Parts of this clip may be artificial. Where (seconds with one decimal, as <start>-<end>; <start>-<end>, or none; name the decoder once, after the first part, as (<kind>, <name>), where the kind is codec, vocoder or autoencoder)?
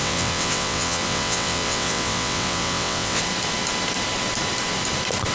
0.0-3.2 (vocoder, WaveNeXt)